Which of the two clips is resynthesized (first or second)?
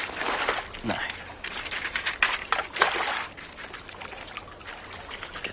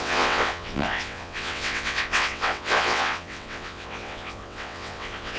second